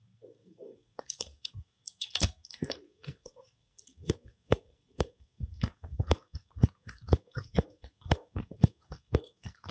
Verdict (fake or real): fake